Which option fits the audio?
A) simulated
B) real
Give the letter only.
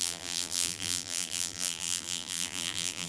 A